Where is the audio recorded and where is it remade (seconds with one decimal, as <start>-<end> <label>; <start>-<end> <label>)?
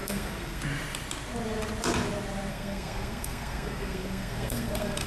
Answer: 0.0-0.6 remade; 0.6-2.5 recorded; 2.5-5.1 remade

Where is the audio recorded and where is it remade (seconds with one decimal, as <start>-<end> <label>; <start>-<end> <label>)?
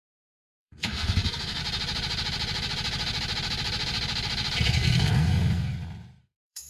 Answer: 0.0-1.6 remade; 1.6-4.7 recorded; 4.7-5.7 remade; 5.7-6.2 recorded; 6.2-6.7 remade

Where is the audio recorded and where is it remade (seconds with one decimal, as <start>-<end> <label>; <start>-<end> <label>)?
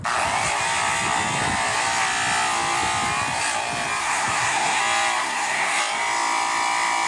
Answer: 0.0-4.0 recorded; 4.0-4.8 remade; 4.8-5.2 recorded; 5.2-5.8 remade; 5.8-7.1 recorded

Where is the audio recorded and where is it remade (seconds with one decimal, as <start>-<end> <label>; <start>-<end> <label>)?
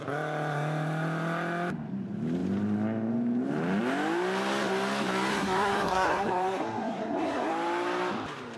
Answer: 0.0-5.3 recorded; 5.3-7.5 remade; 7.5-8.6 recorded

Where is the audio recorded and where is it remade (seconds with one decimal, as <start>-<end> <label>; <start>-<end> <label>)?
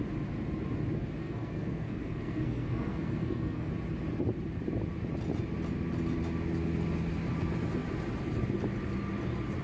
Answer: 0.0-1.2 recorded; 1.2-3.7 remade; 3.7-9.6 recorded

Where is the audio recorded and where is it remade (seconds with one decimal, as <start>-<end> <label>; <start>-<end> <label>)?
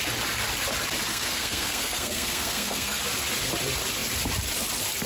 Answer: 0.0-1.1 recorded; 1.1-3.0 remade; 3.0-5.1 recorded